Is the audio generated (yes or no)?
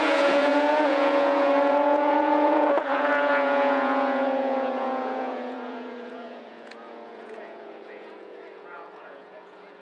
yes